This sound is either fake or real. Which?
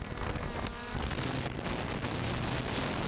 real